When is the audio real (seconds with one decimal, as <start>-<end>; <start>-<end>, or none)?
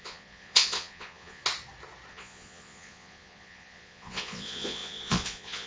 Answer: 1.4-2.1